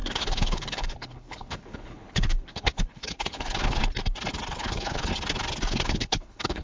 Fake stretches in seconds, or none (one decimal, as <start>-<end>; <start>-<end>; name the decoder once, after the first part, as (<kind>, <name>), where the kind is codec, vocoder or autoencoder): 0.0-3.8 (codec, HILCodec); 4.5-5.1; 5.7-6.6